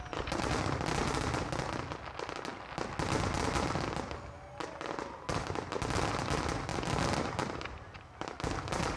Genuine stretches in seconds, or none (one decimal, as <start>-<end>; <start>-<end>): 0.0-6.7; 8.0-9.0